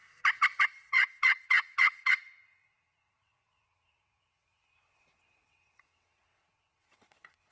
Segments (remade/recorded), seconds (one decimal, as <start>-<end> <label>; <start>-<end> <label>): 0.0-0.6 recorded; 0.6-7.5 remade